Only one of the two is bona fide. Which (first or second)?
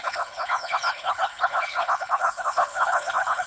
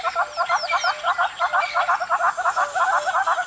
second